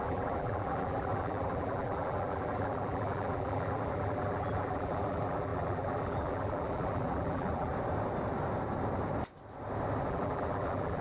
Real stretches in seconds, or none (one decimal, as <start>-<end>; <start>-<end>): 7.7-10.1

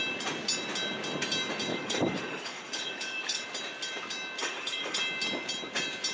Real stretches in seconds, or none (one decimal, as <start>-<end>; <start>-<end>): 0.0-1.7; 3.4-4.4; 5.0-6.1

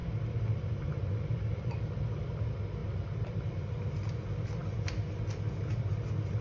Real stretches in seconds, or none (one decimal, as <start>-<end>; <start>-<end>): 2.3-2.8; 3.7-6.4